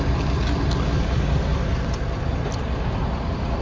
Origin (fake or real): real